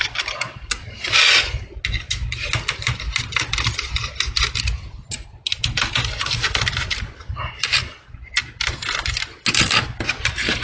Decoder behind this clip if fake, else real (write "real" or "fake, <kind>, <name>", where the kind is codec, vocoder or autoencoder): real